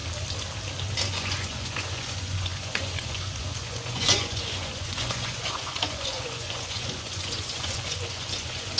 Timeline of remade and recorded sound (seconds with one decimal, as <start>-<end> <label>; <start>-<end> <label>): 0.0-1.1 recorded; 1.1-8.8 remade